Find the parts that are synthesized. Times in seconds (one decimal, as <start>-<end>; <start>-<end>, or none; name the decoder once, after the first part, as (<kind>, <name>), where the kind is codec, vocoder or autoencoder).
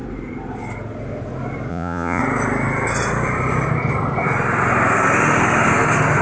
1.7-2.2 (vocoder, Vocos)